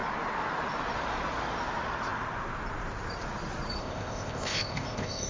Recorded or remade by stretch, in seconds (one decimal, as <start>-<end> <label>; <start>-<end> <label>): 0.0-3.8 recorded; 3.8-5.3 remade

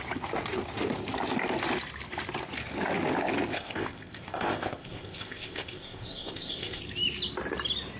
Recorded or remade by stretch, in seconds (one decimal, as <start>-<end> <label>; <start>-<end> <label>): 0.0-3.5 recorded; 3.5-6.8 remade; 6.8-8.0 recorded

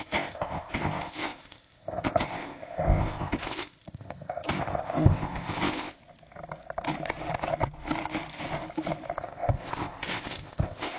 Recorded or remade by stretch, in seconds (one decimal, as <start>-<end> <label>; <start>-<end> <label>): 0.0-6.0 remade; 6.0-9.2 recorded; 9.2-11.0 remade

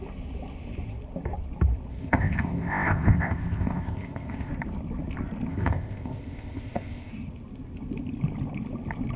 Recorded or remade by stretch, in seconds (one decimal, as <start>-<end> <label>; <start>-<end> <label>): 0.0-1.9 recorded; 1.9-4.5 remade; 4.5-5.5 recorded; 5.5-7.1 remade; 7.1-9.2 recorded

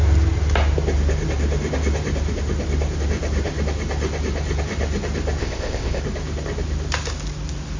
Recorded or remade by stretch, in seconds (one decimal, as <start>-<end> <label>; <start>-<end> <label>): 0.0-5.4 recorded; 5.4-6.0 remade; 6.0-7.8 recorded